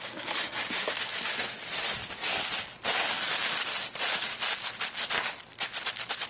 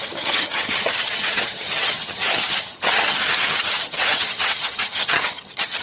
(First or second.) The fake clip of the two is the second